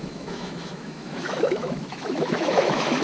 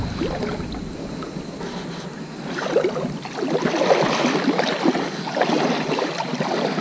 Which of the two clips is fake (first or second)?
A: first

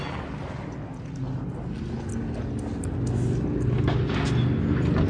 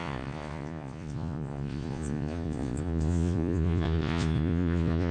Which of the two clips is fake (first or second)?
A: second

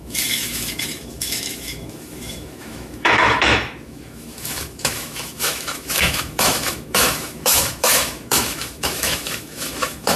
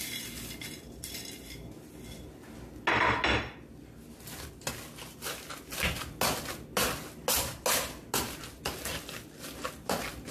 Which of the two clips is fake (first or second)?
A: first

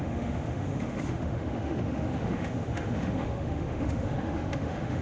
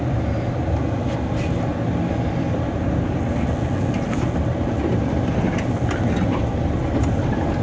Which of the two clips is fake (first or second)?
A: first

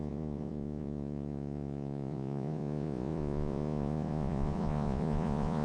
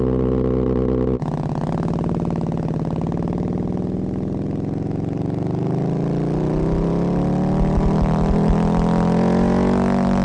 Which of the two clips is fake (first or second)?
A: first